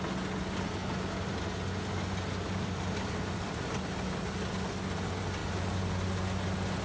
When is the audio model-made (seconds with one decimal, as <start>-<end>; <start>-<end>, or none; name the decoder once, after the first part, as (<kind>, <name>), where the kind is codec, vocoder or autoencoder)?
none